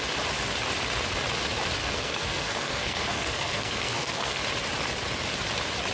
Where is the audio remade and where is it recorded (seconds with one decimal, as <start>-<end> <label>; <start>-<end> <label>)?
0.0-1.8 recorded; 1.8-4.4 remade; 4.4-5.9 recorded